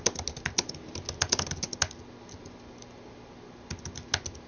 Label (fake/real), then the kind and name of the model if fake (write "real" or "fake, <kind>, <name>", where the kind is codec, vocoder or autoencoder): real